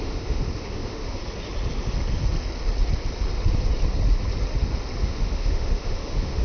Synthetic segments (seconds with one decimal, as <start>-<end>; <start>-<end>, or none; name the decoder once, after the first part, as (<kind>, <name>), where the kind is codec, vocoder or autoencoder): 0.0-1.2 (autoencoder, DAC-VAE); 5.0-6.4